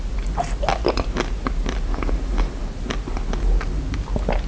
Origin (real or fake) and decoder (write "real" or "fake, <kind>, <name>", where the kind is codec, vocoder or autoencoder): real